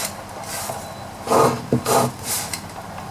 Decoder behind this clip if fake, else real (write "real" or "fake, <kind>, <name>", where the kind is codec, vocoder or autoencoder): real